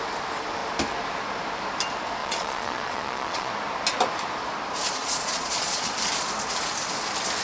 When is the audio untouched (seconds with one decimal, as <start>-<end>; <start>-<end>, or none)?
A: 0.0-2.2; 3.5-5.0; 5.9-7.4